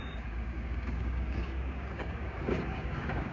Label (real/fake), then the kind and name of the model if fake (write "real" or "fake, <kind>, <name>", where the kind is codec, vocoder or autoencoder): fake, codec, DAC